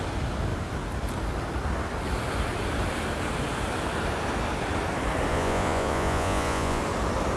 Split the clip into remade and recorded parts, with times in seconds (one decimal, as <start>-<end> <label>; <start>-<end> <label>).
0.0-5.3 recorded; 5.3-6.8 remade; 6.8-7.4 recorded